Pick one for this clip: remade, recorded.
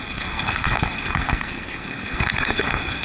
remade